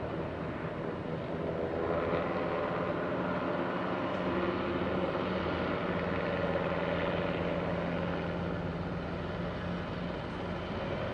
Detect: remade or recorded recorded